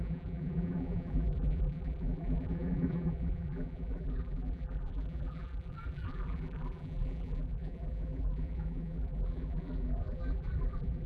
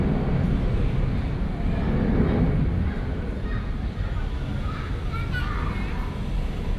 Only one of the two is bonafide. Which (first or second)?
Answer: second